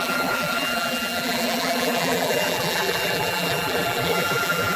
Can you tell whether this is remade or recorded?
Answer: remade